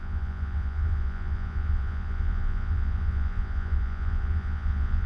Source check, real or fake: fake